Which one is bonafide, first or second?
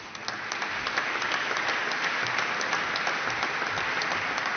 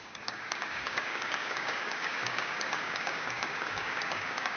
first